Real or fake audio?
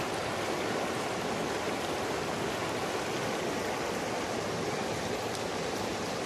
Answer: real